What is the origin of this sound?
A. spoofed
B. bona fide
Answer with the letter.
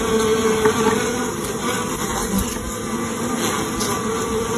B